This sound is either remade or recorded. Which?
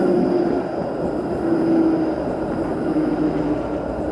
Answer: recorded